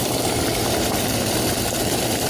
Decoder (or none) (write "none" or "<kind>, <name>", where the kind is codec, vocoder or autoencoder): vocoder, BigVGAN v2